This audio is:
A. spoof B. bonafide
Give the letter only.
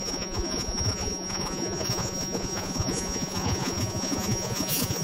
A